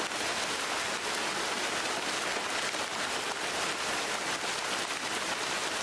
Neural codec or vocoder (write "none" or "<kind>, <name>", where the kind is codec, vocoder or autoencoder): none